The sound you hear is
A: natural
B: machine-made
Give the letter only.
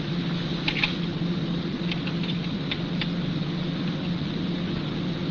A